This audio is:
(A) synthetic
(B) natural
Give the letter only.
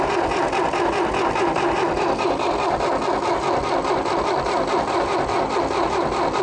B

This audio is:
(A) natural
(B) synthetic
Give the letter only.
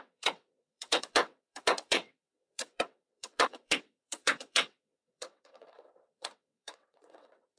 B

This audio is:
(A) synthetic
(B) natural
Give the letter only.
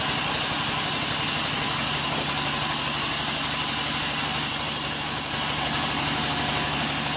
B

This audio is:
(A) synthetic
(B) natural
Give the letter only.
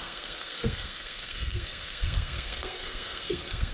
A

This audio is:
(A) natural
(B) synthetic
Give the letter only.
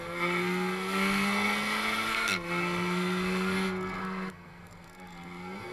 B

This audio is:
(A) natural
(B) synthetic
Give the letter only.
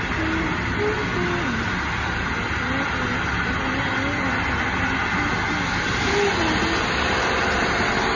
A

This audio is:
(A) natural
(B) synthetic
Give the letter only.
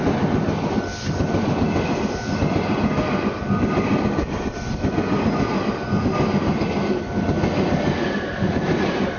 A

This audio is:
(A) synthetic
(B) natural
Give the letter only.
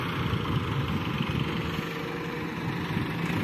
B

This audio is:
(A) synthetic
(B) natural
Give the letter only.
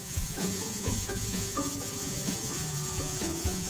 A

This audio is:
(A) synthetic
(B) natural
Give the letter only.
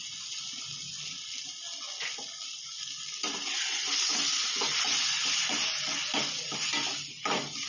B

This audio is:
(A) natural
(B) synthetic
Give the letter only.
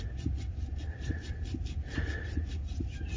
A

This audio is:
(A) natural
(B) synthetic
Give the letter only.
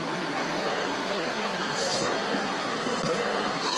B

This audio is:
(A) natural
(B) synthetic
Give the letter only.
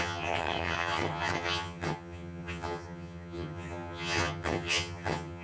B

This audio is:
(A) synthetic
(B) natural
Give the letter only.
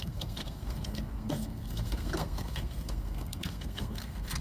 A